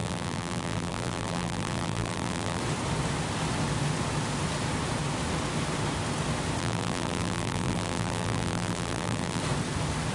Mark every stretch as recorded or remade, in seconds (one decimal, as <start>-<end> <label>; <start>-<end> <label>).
0.0-2.6 remade; 2.6-6.6 recorded; 6.6-9.4 remade; 9.4-10.1 recorded